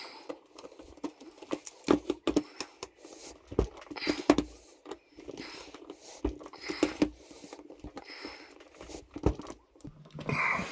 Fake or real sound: real